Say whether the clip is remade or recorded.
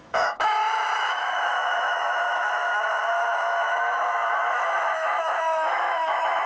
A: remade